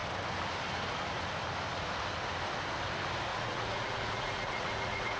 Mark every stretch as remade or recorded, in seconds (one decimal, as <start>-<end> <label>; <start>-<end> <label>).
0.0-3.3 recorded; 3.3-5.2 remade